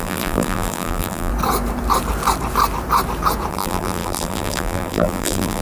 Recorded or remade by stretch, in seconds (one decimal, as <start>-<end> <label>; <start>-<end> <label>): 0.0-1.3 remade; 1.3-3.5 recorded; 3.5-5.6 remade